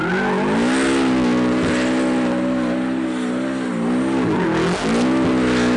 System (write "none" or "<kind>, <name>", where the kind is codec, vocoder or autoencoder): none